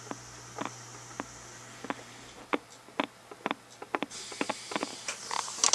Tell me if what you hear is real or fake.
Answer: real